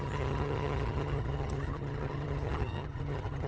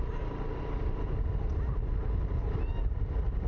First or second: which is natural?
second